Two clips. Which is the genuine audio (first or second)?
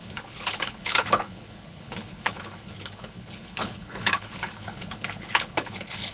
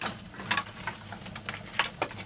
second